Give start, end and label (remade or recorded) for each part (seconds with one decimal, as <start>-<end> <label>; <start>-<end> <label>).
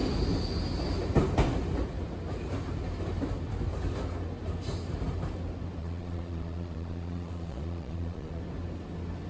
0.0-5.8 recorded; 5.8-8.4 remade; 8.4-9.3 recorded